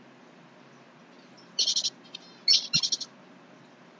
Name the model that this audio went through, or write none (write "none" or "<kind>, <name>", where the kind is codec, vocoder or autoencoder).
none